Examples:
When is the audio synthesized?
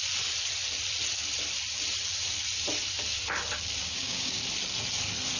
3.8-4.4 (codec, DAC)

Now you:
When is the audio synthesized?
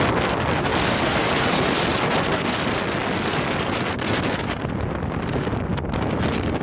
none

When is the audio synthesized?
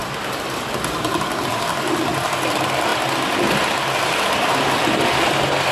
none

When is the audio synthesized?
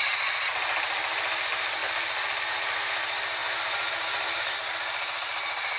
none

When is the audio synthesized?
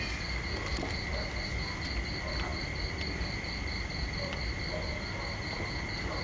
none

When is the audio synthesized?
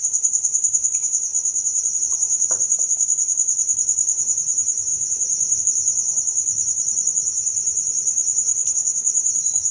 0.0-1.3 (vocoder, BigVGAN v2); 2.0-9.7